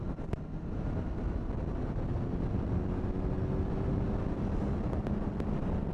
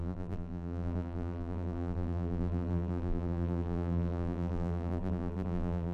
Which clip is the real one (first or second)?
first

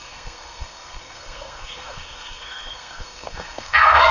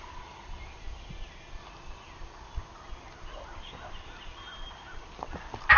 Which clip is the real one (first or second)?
second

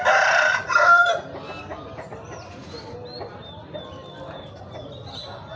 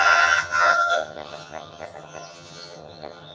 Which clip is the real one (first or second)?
first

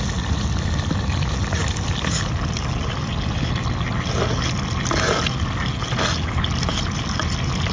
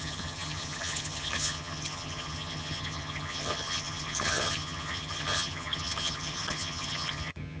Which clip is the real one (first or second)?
first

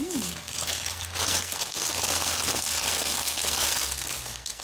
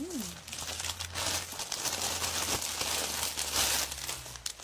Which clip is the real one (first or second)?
second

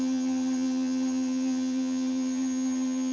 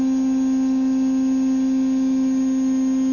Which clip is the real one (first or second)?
second